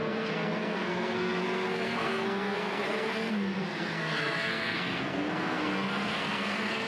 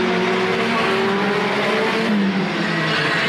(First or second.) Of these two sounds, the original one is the second